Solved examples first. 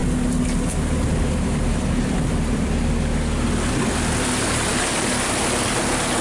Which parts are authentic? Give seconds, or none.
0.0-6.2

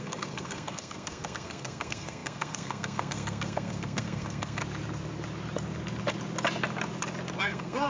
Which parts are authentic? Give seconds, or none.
4.6-7.4

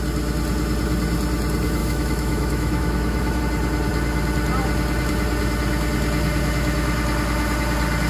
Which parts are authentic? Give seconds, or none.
0.0-1.8; 3.4-8.1

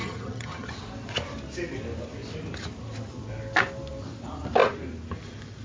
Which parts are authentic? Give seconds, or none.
0.7-5.6

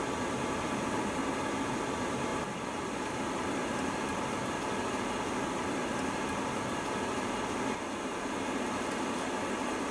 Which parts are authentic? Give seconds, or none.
0.0-2.3; 4.2-9.9